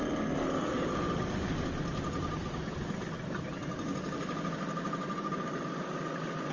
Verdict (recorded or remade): recorded